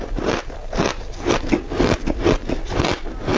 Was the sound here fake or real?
real